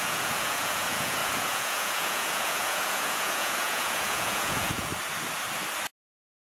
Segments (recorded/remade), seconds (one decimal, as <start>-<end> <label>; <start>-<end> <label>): 0.0-4.9 remade; 4.9-6.1 recorded; 6.1-6.5 remade